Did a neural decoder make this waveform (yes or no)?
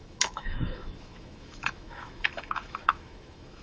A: yes